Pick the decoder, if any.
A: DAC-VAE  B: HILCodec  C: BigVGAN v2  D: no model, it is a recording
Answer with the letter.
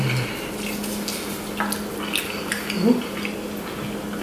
D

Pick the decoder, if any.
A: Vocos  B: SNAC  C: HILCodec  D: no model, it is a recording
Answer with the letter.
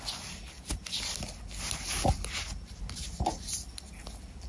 D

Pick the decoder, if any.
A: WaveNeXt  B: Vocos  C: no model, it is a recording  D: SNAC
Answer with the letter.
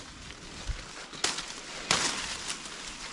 C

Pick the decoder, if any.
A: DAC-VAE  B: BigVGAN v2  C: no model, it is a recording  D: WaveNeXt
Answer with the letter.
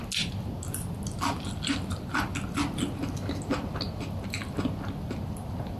C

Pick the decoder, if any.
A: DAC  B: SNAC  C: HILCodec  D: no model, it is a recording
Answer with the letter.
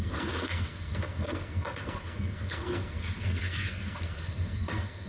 B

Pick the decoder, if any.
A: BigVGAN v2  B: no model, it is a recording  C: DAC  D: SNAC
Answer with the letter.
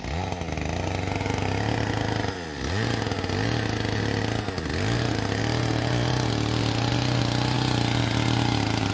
B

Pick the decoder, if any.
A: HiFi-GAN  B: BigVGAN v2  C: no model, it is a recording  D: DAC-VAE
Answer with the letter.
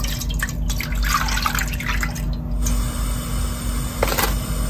C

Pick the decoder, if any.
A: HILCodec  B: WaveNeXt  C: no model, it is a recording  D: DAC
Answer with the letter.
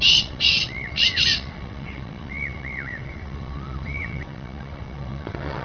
B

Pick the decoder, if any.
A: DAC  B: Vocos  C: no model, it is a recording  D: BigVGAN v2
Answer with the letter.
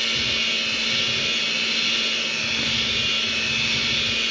C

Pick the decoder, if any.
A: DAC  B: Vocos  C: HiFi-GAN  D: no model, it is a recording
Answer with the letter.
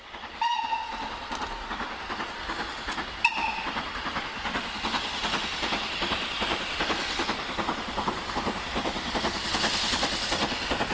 D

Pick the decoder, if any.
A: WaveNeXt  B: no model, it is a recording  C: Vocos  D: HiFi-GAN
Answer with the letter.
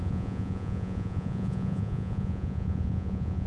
C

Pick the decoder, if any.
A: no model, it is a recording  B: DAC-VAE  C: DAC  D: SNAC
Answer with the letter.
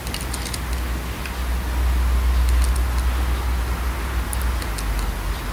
A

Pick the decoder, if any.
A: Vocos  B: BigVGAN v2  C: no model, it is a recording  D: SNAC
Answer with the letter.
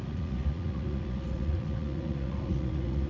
A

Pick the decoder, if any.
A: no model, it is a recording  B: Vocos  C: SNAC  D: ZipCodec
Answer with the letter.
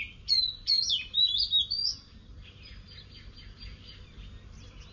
A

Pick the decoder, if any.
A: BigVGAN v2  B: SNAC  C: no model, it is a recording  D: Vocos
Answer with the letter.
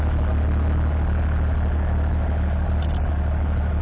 C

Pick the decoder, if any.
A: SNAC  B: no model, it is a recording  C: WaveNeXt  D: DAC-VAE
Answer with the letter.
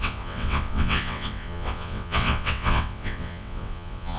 C